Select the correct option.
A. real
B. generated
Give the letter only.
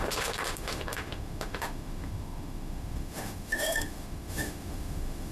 B